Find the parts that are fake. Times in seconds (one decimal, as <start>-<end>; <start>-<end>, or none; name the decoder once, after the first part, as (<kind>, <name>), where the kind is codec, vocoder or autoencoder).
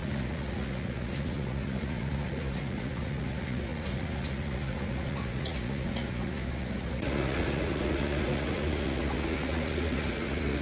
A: 0.0-10.6 (vocoder, Vocos)